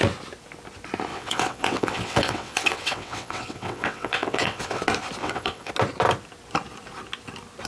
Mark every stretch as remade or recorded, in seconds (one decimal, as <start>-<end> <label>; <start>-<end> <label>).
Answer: 0.0-1.1 recorded; 1.1-4.8 remade; 4.8-5.2 recorded; 5.2-5.7 remade; 5.7-7.7 recorded